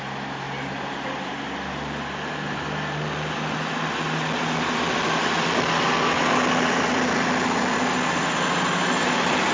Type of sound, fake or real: real